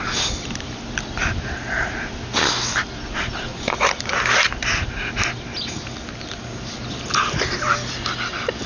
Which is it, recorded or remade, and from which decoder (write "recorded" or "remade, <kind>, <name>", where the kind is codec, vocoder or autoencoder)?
recorded